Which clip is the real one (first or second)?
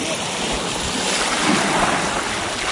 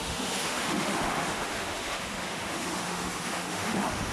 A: first